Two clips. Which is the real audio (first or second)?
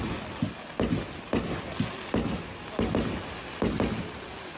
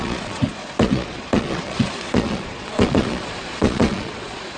first